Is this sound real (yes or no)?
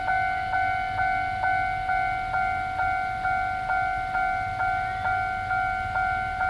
yes